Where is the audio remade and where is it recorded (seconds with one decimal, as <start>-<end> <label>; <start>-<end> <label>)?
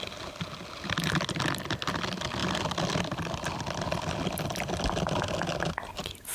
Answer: 0.0-6.3 recorded